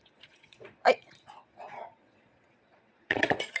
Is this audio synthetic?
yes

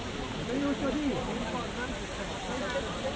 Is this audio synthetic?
no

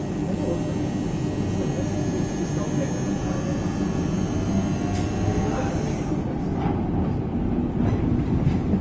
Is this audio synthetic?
no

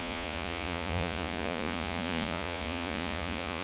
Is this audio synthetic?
yes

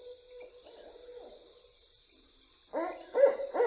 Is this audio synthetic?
no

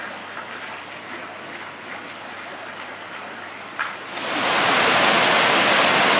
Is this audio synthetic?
no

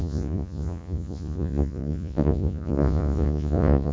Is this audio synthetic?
yes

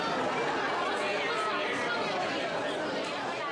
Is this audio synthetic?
no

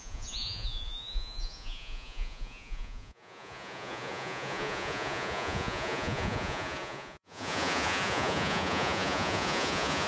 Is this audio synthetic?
yes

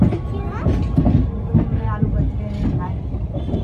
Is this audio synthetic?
no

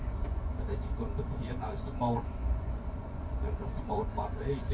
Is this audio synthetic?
yes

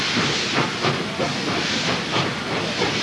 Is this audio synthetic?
no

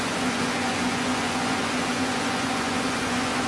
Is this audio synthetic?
yes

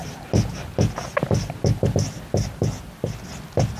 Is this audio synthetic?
no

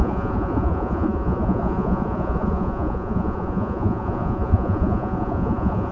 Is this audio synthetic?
yes